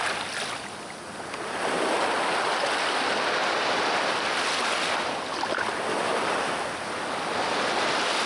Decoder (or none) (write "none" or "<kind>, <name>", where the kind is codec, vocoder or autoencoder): none